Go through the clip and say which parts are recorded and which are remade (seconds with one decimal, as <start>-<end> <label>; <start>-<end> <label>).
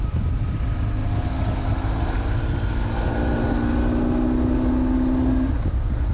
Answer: 0.0-6.1 recorded